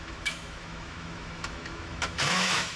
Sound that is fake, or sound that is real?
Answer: fake